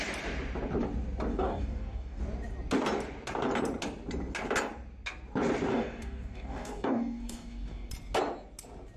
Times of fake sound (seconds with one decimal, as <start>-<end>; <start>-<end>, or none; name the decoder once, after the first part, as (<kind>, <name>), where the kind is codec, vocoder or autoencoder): 1.3-2.2 (codec, DAC); 5.7-7.9